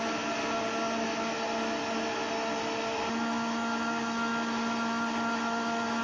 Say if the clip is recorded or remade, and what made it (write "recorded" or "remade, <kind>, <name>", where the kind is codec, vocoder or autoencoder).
recorded